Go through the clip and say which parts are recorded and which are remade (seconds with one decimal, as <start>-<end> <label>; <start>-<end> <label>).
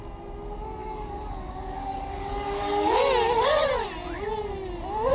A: 0.0-0.8 recorded; 0.8-3.0 remade; 3.0-5.1 recorded